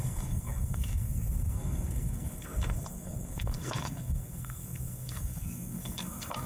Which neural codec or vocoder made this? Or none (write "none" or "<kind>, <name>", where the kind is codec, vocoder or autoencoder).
codec, SNAC